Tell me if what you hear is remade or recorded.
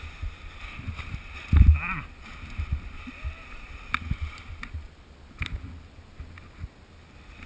recorded